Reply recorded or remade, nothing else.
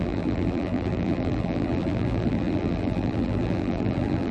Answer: remade